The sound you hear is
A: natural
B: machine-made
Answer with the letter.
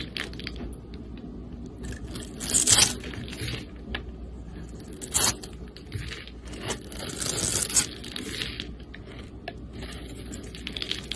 A